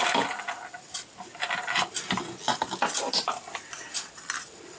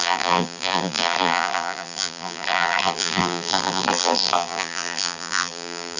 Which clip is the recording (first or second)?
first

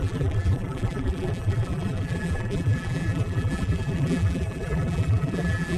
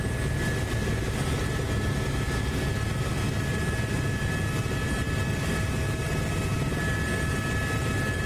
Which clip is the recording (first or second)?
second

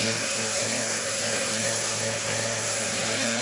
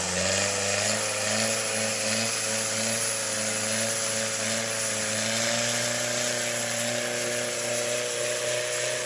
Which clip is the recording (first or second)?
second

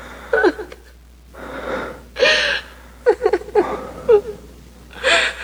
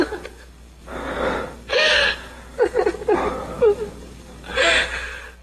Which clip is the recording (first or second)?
first